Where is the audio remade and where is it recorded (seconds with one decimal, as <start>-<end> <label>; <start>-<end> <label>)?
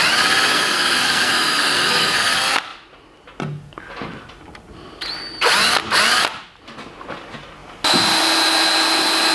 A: 0.0-0.5 recorded; 0.5-2.3 remade; 2.3-9.3 recorded